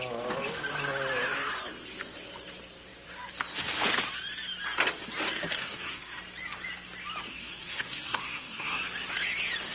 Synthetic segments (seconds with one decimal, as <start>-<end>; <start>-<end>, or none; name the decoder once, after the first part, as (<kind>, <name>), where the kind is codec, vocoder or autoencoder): 5.6-6.2 (codec, SNAC); 7.3-8.8